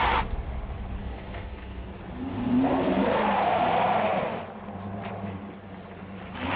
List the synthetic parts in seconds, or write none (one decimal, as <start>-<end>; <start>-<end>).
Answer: 1.0-1.9